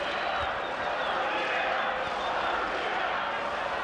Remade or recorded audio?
recorded